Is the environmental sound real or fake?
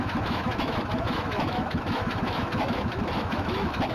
fake